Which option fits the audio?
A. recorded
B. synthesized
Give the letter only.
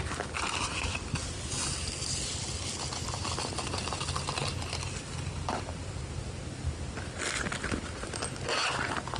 A